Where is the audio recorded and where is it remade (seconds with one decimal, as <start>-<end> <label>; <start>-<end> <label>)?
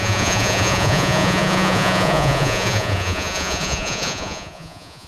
0.0-5.1 remade